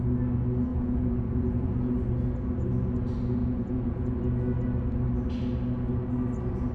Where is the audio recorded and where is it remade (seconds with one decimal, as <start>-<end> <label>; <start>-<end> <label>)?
0.0-0.7 recorded; 0.7-1.9 remade; 1.9-3.4 recorded; 3.4-4.1 remade; 4.1-6.7 recorded